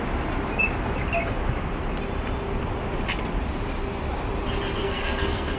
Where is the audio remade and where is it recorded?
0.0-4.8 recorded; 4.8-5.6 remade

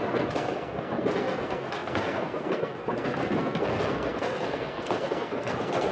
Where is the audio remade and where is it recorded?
0.0-5.9 remade

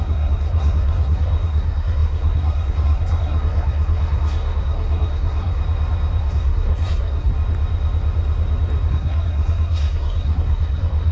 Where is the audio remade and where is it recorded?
0.0-5.6 remade; 5.6-6.2 recorded; 6.2-7.3 remade; 7.3-8.9 recorded; 8.9-11.1 remade

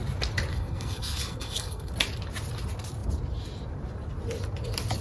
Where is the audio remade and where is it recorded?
0.0-0.5 recorded; 0.5-1.9 remade; 1.9-5.0 recorded

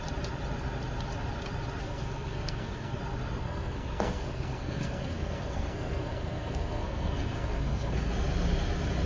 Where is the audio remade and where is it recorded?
0.0-1.8 recorded; 1.8-3.0 remade; 3.0-3.4 recorded; 3.4-8.1 remade; 8.1-9.1 recorded

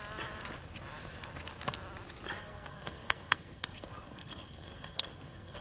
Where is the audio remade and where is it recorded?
0.0-2.4 recorded; 2.4-5.6 remade

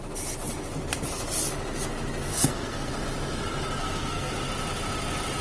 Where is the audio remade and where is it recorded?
0.0-2.3 recorded; 2.3-2.9 remade; 2.9-3.8 recorded; 3.8-4.3 remade; 4.3-5.4 recorded